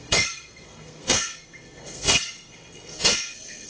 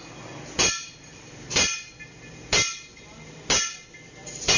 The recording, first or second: second